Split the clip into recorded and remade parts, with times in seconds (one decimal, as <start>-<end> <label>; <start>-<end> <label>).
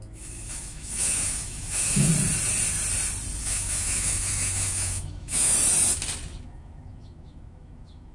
0.0-2.1 remade; 2.1-3.4 recorded; 3.4-5.5 remade; 5.5-6.4 recorded; 6.4-8.1 remade